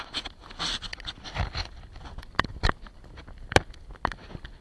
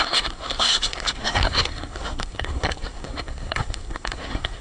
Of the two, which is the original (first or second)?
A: first